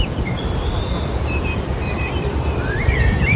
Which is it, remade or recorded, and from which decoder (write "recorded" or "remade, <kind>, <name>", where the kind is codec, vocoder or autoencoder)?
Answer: remade, vocoder, BigVGAN v2